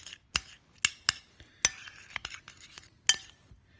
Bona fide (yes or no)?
yes